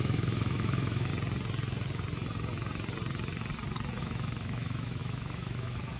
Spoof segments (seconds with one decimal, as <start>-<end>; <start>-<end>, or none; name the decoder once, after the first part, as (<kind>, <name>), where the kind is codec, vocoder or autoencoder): 0.0-1.1 (autoencoder, DAC-VAE); 4.0-6.0